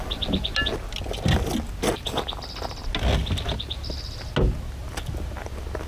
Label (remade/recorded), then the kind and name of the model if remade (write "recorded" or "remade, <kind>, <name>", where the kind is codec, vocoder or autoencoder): recorded